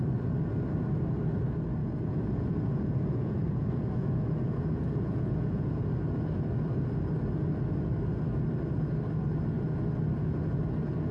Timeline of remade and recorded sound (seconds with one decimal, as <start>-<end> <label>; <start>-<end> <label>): 0.0-1.8 recorded; 1.8-5.8 remade; 5.8-11.1 recorded